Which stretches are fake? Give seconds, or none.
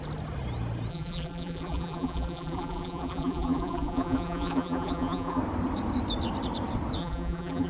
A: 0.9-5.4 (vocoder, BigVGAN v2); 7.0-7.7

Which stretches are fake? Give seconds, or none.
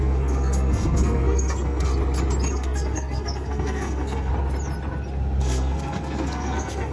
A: 0.0-1.9 (codec, SNAC); 2.5-4.3; 5.4-6.9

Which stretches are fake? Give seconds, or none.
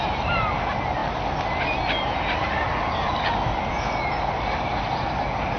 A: none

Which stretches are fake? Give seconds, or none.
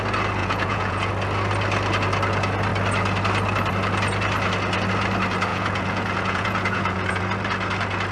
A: 0.4-1.1 (vocoder, Vocos); 5.5-7.2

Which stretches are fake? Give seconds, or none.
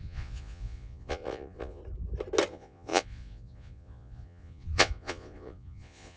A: 0.0-1.8 (vocoder, Vocos); 2.5-6.2